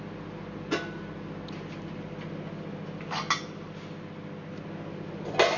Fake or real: real